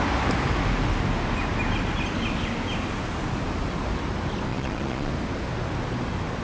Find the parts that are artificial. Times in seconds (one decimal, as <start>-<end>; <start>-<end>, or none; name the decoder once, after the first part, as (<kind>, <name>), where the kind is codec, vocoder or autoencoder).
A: 4.5-5.1 (vocoder, Vocos)